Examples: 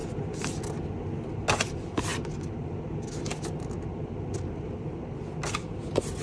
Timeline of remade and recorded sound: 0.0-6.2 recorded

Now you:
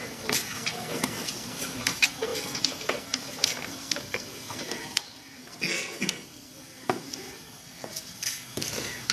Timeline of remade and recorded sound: 0.0-9.1 remade

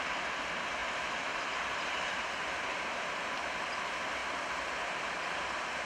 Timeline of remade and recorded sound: 0.0-5.9 remade

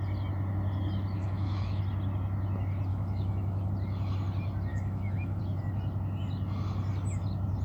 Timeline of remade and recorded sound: 0.0-1.2 recorded; 1.2-1.8 remade; 1.8-2.9 recorded; 2.9-3.7 remade; 3.7-4.7 recorded; 4.7-5.4 remade; 5.4-7.6 recorded

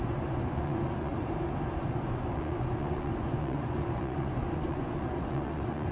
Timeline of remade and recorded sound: 0.0-1.1 remade; 1.1-1.7 recorded; 1.7-5.9 remade

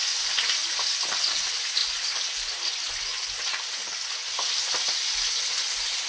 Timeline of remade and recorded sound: 0.0-0.6 recorded; 0.6-1.2 remade; 1.2-1.8 recorded; 1.8-2.5 remade; 2.5-6.1 recorded

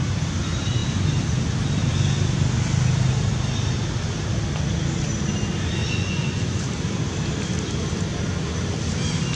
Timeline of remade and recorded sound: 0.0-5.8 recorded; 5.8-6.6 remade; 6.6-9.4 recorded